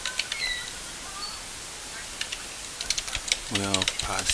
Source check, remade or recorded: recorded